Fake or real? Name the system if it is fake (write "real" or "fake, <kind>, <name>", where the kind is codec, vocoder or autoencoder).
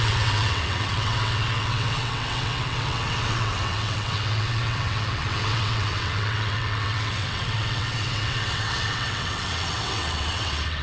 fake, vocoder, WaveNeXt